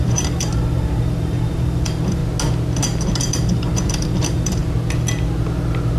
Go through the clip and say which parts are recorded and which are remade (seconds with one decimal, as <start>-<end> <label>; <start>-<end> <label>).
0.0-2.2 remade; 2.2-3.2 recorded; 3.2-4.6 remade; 4.6-6.0 recorded